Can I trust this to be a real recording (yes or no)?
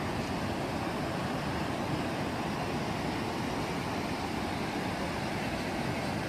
yes